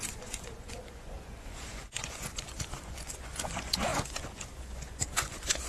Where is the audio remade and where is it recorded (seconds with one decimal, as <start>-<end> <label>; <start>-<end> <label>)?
0.0-5.7 remade